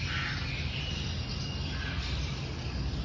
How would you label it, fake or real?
real